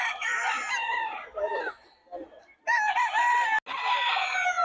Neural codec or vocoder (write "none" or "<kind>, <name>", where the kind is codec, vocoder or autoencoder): none